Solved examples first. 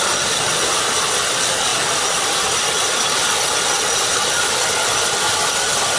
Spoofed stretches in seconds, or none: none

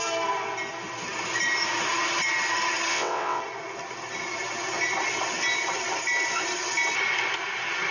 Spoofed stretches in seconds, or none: 2.9-3.4 (vocoder, WaveNeXt)

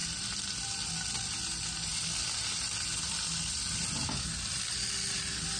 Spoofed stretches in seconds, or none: none

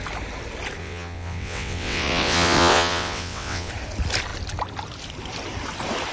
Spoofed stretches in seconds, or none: 0.8-3.7 (vocoder, WaveNeXt)